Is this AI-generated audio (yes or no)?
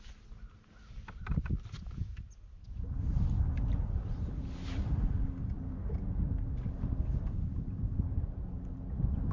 no